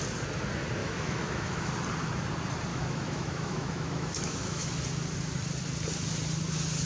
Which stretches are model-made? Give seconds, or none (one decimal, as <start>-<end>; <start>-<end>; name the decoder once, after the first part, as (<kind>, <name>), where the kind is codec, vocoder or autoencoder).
0.8-1.7 (autoencoder, DAC-VAE); 2.7-4.7